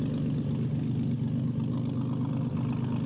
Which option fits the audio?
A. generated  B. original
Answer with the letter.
B